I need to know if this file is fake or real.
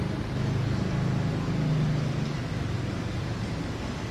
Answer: real